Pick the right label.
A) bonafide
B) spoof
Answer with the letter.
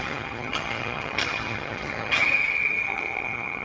B